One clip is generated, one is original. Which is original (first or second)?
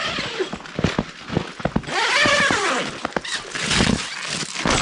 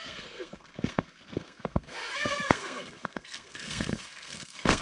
first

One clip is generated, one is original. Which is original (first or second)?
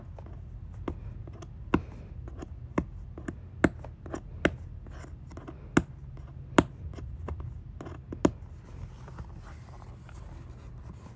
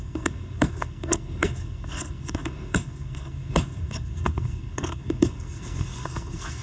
first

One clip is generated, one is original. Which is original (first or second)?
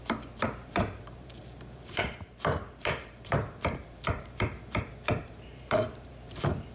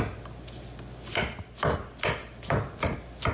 second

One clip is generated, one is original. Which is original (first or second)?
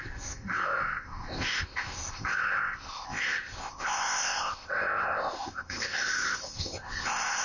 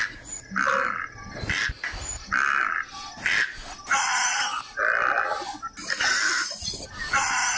second